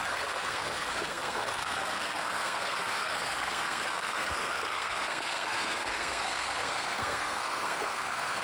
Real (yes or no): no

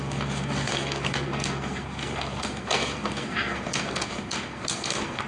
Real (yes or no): no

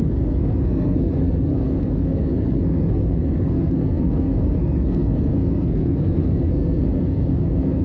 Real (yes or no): no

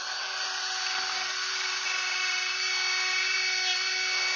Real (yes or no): yes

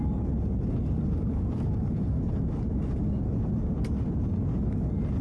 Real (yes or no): yes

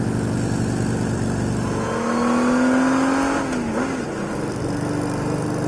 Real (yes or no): yes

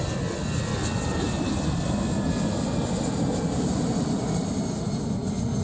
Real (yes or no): yes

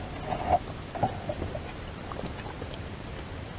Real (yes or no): yes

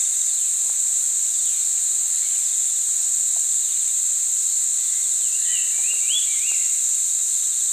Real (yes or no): yes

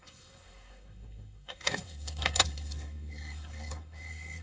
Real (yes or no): no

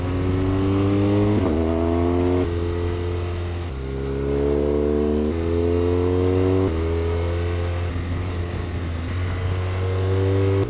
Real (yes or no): yes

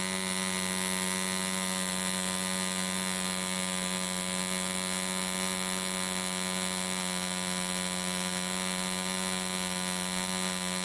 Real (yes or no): yes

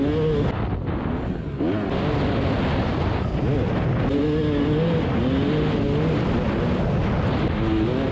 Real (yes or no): yes